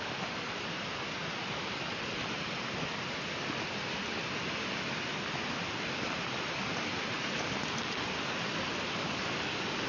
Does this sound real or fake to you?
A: real